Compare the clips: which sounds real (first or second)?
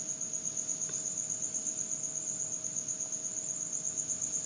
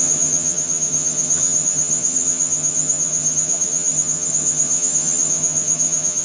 first